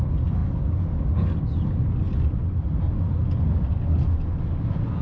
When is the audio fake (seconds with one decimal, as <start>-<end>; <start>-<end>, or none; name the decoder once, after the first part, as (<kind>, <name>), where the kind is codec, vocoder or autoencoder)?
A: none